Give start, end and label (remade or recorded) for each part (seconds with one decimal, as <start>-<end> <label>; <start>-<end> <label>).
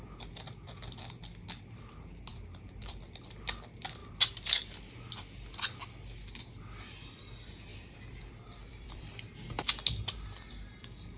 0.0-2.3 recorded; 2.3-3.0 remade; 3.0-7.7 recorded; 7.7-9.2 remade; 9.2-11.2 recorded